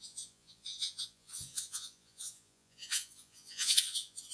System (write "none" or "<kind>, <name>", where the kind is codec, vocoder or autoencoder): vocoder, Vocos